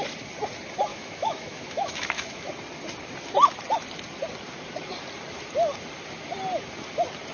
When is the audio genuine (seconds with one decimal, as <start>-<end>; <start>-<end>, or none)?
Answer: 0.0-0.9; 2.5-7.3